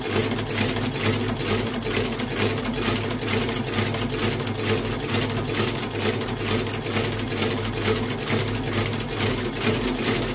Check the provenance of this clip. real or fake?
real